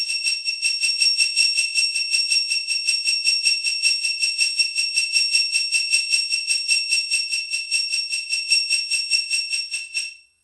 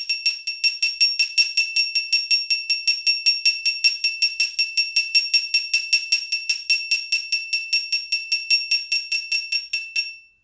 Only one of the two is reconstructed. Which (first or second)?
first